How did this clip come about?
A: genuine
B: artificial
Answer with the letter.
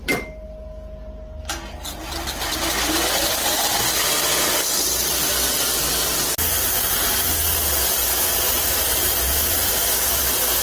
A